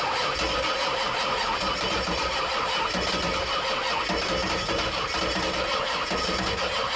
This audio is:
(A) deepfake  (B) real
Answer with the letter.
B